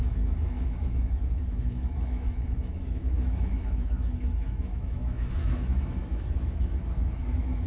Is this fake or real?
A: fake